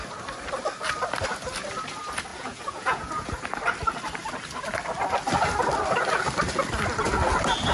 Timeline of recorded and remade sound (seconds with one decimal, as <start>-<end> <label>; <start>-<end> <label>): 0.0-2.3 recorded; 2.3-3.3 remade; 3.3-7.7 recorded